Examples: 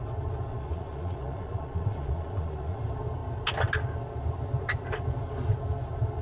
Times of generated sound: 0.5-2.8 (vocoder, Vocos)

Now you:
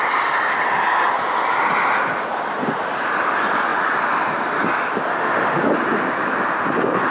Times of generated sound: 5.1-5.7 (autoencoder, DAC-VAE)

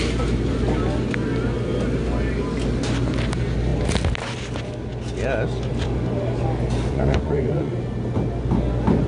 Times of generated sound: 6.9-7.7 (vocoder, Vocos)

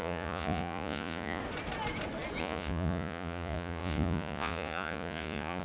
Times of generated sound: 0.0-1.4 (vocoder, Vocos); 2.4-5.6

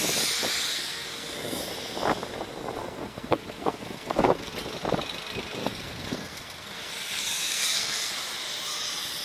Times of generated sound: 0.7-1.6 (codec, SNAC); 2.8-4.5; 5.6-8.1

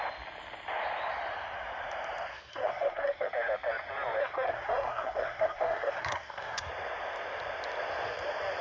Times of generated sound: 2.3-3.3 (codec, SNAC); 4.2-6.7

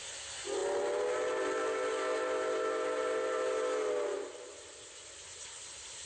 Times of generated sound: none

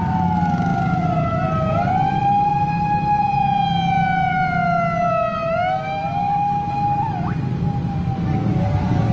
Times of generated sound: 5.6-6.7 (codec, DAC)